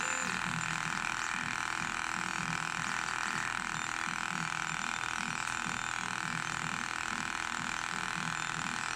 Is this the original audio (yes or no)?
yes